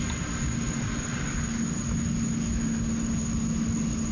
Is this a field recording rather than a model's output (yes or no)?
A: yes